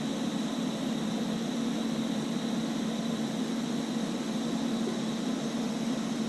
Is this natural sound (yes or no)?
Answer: no